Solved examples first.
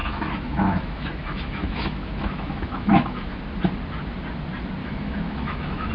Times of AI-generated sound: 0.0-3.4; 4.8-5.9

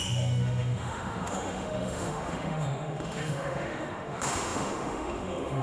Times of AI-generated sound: 0.0-5.6

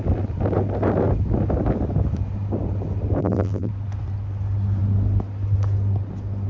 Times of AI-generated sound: 3.2-3.7

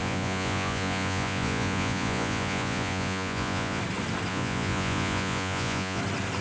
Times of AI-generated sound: 0.0-3.8; 4.3-6.0